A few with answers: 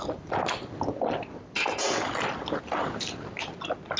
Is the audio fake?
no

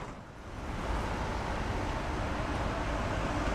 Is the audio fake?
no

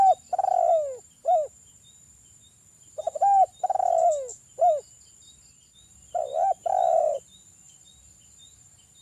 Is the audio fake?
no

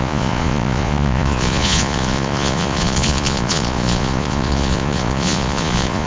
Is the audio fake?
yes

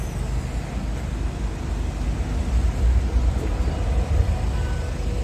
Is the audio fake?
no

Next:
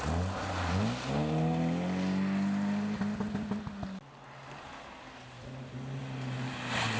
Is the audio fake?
no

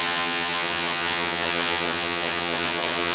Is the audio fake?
yes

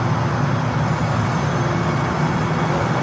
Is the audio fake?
yes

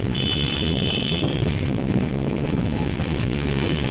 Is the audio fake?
yes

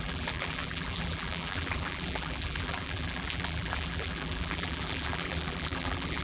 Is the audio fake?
yes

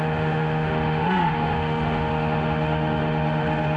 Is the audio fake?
yes